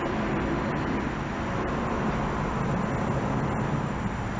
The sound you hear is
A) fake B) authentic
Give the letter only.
B